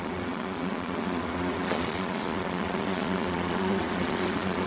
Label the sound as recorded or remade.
remade